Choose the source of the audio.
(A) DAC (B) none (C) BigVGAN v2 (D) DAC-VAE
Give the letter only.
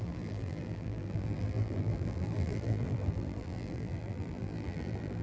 C